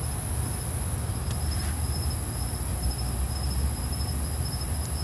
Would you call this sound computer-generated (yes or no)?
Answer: no